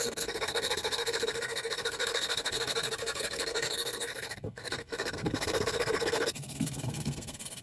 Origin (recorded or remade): remade